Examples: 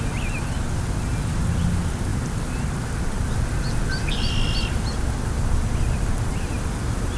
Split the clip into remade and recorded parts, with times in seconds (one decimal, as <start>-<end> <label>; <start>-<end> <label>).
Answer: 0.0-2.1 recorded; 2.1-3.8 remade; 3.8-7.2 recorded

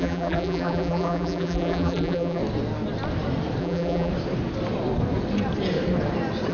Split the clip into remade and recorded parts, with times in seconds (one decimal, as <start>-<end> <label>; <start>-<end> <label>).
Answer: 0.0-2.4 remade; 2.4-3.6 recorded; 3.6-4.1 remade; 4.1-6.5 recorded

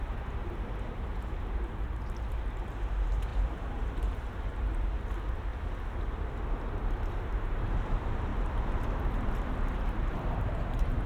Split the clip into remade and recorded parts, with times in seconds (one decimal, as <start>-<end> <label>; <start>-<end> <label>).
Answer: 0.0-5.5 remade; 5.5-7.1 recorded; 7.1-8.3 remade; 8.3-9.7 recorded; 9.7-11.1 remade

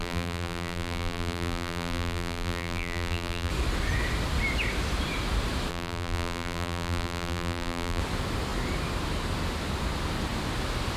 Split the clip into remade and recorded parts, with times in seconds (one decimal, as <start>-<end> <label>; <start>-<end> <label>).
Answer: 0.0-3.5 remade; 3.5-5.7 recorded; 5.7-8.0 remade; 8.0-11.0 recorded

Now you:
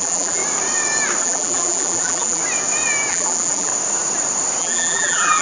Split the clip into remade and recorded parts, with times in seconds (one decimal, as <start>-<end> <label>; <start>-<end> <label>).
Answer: 0.0-0.4 remade; 0.4-1.2 recorded; 1.2-2.4 remade; 2.4-3.1 recorded; 3.1-3.7 remade; 3.7-4.6 recorded; 4.6-5.4 remade

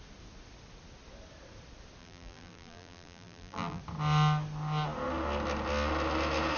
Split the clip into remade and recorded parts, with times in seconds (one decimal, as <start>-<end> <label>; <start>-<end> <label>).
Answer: 0.0-2.0 recorded; 2.0-3.8 remade; 3.8-6.6 recorded

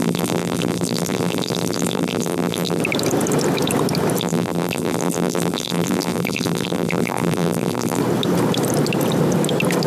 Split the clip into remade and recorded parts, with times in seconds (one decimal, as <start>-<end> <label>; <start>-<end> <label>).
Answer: 0.0-2.8 remade; 2.8-4.2 recorded; 4.2-8.0 remade; 8.0-9.9 recorded